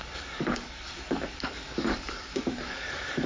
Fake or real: fake